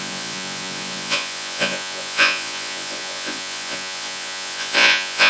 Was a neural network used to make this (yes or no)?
yes